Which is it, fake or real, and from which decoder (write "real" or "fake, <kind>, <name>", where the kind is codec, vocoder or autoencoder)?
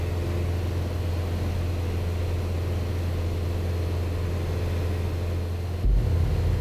real